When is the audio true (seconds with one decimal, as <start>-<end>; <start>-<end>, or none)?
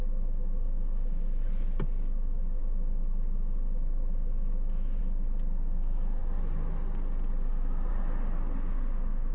0.0-9.3